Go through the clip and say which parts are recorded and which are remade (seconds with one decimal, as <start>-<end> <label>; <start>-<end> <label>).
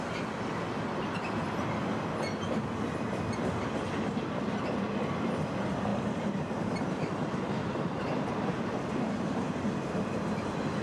0.0-5.9 recorded; 5.9-9.6 remade; 9.6-10.8 recorded